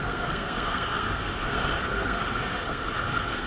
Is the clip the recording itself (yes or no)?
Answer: no